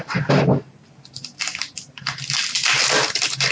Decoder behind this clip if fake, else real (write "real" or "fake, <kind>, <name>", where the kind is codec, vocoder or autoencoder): real